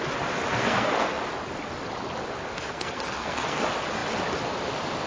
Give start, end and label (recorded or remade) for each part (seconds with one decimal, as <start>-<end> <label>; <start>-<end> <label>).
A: 0.0-0.5 recorded; 0.5-1.2 remade; 1.2-2.5 recorded; 2.5-3.6 remade; 3.6-5.1 recorded